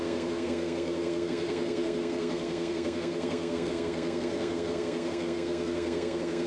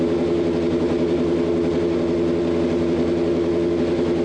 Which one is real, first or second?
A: second